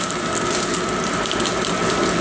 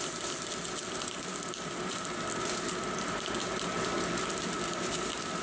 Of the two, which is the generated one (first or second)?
second